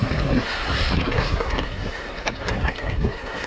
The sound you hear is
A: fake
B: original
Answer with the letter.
A